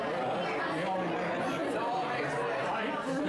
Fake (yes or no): no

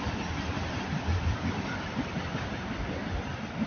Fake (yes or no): no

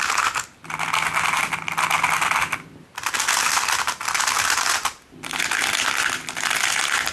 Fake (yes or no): no